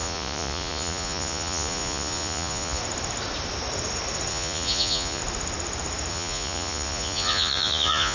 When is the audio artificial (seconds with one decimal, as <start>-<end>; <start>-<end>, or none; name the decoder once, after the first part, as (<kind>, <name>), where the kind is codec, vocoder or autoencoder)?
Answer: 0.0-2.8 (vocoder, Vocos); 4.3-5.2; 6.1-8.1